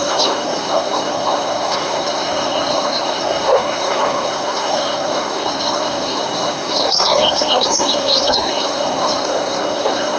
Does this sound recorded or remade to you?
remade